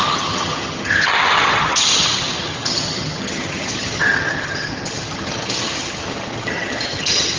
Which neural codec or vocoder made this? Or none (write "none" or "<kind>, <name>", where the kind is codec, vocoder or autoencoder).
vocoder, HiFi-GAN